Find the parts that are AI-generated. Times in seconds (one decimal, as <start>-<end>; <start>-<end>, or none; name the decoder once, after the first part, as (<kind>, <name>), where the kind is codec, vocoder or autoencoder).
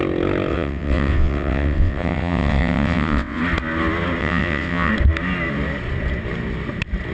0.5-3.4 (vocoder, WaveNeXt); 4.2-4.9